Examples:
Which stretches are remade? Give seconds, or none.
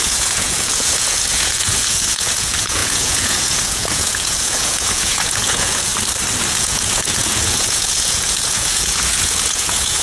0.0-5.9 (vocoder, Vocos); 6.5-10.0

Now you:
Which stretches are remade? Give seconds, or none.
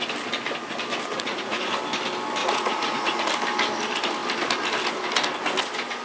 1.1-1.7 (vocoder, Vocos); 2.4-3.3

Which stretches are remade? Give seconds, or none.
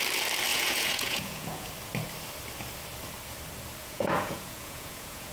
0.5-1.7 (vocoder, Vocos); 3.8-5.3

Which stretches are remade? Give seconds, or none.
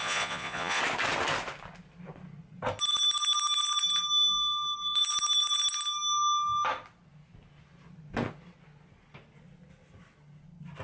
0.0-0.8 (vocoder, Vocos)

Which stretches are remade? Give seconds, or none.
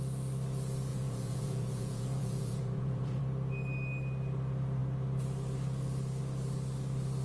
0.9-3.2 (vocoder, Vocos)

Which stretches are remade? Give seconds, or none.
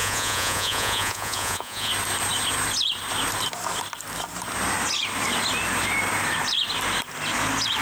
0.0-1.9 (vocoder, Vocos)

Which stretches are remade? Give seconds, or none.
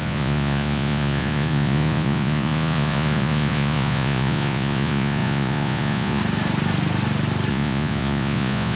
0.0-6.2 (vocoder, Vocos); 7.5-8.8